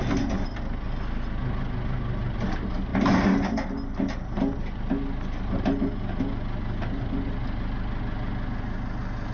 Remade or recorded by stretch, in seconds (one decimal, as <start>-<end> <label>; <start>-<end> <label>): 0.0-9.3 recorded